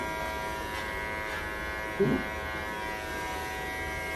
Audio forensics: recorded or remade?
recorded